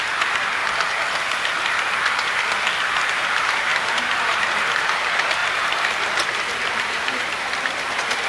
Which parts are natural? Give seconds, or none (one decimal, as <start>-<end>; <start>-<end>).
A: 0.6-2.8; 5.4-5.9